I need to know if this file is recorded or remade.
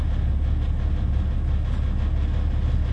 recorded